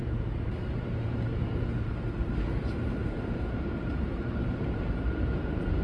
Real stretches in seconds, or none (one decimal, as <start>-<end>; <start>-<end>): none